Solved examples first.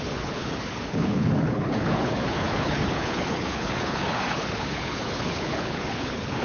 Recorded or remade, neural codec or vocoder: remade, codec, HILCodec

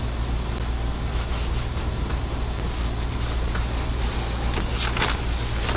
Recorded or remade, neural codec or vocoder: recorded